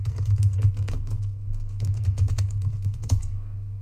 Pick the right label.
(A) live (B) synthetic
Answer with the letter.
B